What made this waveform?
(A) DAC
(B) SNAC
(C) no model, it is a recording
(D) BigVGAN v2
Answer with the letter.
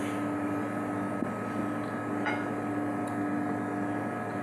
C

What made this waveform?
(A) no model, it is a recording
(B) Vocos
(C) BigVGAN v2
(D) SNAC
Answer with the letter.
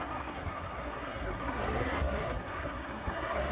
D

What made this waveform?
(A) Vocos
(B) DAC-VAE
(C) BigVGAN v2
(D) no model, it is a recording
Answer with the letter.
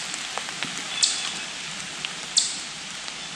D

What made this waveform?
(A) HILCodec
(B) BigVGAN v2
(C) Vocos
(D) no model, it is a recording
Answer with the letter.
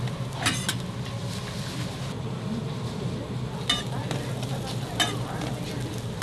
D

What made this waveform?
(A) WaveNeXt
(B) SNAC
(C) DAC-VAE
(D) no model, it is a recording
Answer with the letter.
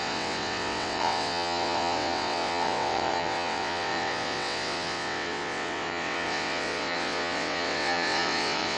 A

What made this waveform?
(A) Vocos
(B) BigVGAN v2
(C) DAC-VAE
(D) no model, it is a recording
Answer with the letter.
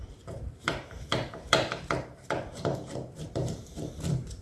B